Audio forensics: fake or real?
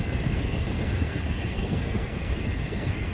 fake